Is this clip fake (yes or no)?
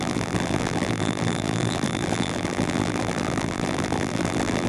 yes